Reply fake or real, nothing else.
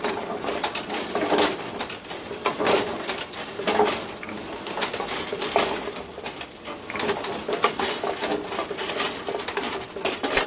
real